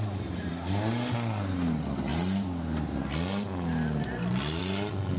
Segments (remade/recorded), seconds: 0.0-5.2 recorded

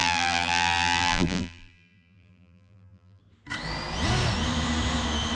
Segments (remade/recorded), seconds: 0.0-3.2 remade; 3.2-5.4 recorded

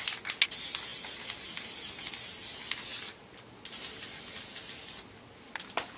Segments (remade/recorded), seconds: 0.0-6.0 recorded

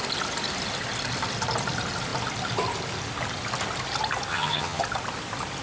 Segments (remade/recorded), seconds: 0.0-4.3 recorded; 4.3-4.8 remade; 4.8-5.6 recorded

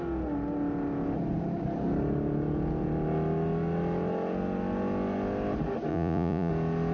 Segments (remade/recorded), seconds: 0.0-5.9 recorded; 5.9-6.5 remade; 6.5-6.9 recorded

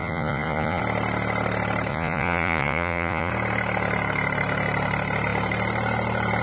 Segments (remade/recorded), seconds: 0.0-0.8 remade; 0.8-1.9 recorded; 1.9-3.3 remade; 3.3-6.4 recorded

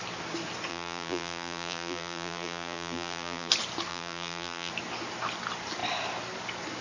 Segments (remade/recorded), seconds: 0.0-0.7 recorded; 0.7-3.5 remade; 3.5-3.9 recorded; 3.9-4.7 remade; 4.7-6.8 recorded